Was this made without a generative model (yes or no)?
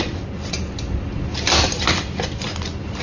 yes